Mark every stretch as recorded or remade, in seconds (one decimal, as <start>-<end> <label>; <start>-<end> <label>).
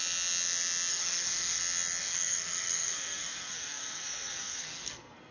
0.0-0.9 recorded; 0.9-1.6 remade; 1.6-2.0 recorded; 2.0-5.3 remade